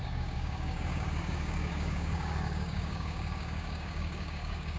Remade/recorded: remade